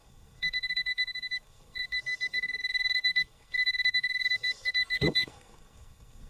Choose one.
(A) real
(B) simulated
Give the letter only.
B